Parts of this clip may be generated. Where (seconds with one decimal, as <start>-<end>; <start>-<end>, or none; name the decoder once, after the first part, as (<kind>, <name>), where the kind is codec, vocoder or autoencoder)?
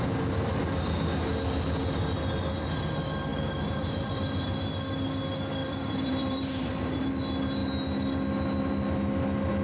3.3-4.1 (vocoder, BigVGAN v2); 5.6-7.1